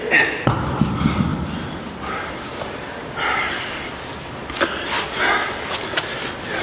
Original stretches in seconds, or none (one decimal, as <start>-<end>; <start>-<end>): 0.0-1.3; 3.5-6.6